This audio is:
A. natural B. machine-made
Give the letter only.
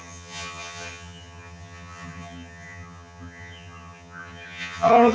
B